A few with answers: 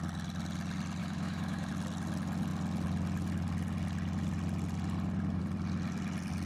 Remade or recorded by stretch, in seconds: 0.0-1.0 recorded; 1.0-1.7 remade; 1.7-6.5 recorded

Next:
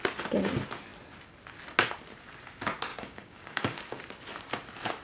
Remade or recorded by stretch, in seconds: 0.0-2.9 recorded; 2.9-4.0 remade; 4.0-5.0 recorded

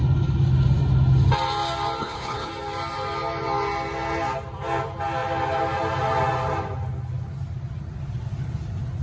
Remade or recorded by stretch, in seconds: 0.0-2.0 recorded; 2.0-2.5 remade; 2.5-9.0 recorded

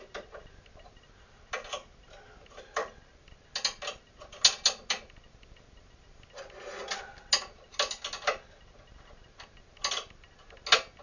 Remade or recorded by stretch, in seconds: 0.0-11.0 recorded

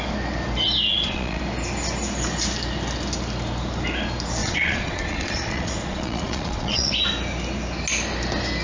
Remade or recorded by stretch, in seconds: 0.0-0.9 recorded; 0.9-1.4 remade; 1.4-4.4 recorded; 4.4-6.9 remade; 6.9-8.6 recorded

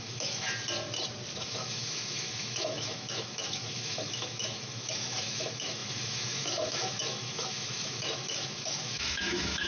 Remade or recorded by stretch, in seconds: 0.0-0.6 remade; 0.6-1.4 recorded; 1.4-9.7 remade